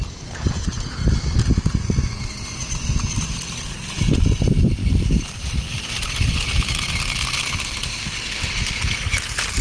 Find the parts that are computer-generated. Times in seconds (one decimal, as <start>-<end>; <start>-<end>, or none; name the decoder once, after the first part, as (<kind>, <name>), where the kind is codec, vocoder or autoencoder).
none